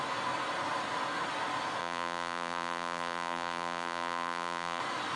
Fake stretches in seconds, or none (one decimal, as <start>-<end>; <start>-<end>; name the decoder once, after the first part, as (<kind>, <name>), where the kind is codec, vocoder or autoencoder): 1.8-4.8 (vocoder, BigVGAN v2)